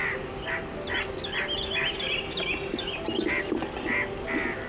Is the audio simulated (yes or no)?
no